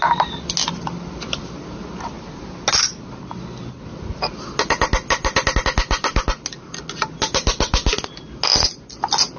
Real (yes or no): yes